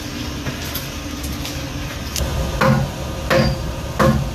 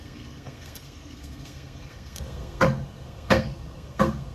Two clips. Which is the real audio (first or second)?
first